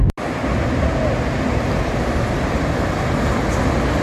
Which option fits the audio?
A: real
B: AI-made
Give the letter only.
A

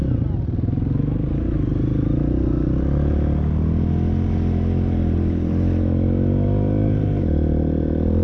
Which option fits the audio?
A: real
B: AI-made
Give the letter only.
A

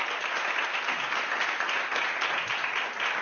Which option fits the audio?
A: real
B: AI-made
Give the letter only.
A